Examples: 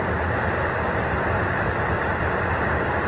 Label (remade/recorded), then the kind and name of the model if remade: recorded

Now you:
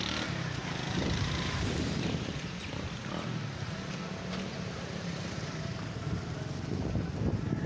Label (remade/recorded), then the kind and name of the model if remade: remade, vocoder, BigVGAN v2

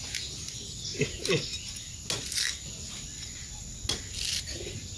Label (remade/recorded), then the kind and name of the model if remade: recorded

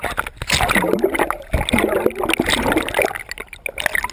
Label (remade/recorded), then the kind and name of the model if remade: recorded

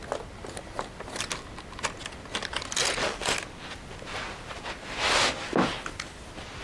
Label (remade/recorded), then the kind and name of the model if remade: recorded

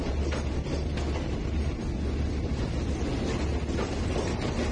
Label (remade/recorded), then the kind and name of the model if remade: recorded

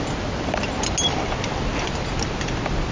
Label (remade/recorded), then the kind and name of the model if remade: recorded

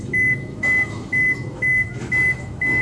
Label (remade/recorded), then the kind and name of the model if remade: remade, autoencoder, DAC-VAE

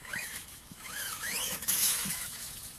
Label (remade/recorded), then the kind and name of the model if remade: remade, autoencoder, DAC-VAE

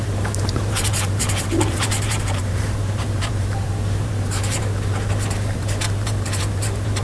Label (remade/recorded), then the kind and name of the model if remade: remade, vocoder, BigVGAN v2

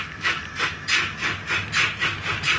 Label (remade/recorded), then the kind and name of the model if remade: recorded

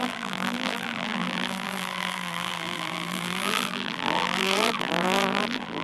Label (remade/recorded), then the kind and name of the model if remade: remade, vocoder, BigVGAN v2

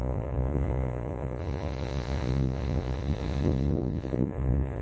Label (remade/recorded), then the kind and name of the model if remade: remade, vocoder, Vocos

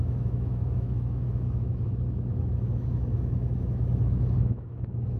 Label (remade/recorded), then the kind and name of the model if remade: remade, autoencoder, DAC-VAE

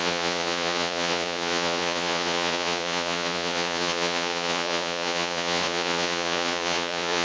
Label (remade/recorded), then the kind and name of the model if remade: remade, vocoder, Vocos